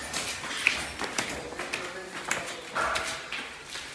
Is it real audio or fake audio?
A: real